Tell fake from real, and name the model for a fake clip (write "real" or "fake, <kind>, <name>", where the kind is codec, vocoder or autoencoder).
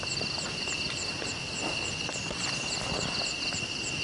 real